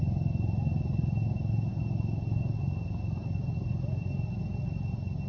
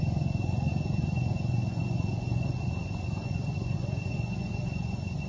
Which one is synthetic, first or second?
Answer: second